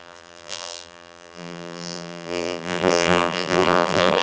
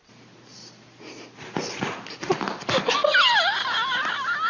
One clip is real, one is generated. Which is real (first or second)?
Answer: second